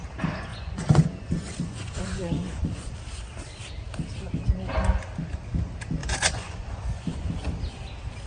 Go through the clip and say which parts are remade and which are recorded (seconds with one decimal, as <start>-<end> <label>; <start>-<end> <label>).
0.0-0.5 recorded; 0.5-2.9 remade; 2.9-6.0 recorded; 6.0-7.5 remade; 7.5-8.3 recorded